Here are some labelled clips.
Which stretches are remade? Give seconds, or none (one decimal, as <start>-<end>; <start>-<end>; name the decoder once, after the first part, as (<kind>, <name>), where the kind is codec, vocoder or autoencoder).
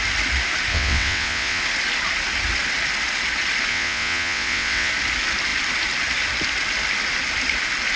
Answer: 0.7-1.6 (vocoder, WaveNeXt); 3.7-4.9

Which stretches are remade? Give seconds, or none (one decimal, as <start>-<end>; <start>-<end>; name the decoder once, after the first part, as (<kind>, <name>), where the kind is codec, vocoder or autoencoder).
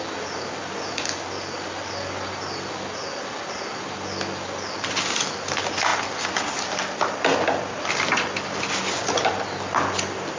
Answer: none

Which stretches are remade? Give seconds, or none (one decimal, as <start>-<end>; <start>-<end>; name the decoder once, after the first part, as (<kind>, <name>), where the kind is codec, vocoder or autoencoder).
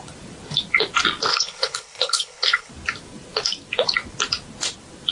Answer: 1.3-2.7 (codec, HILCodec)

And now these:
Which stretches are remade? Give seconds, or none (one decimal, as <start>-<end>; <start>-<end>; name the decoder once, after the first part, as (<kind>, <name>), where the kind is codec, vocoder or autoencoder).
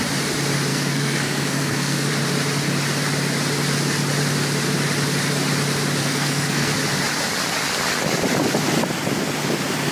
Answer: 0.7-2.1 (codec, SNAC); 6.0-6.7